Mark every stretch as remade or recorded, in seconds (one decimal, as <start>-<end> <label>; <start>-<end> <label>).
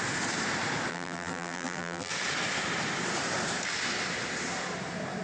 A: 0.0-0.9 recorded; 0.9-2.1 remade; 2.1-5.2 recorded